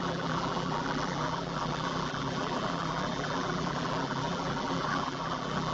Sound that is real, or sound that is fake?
fake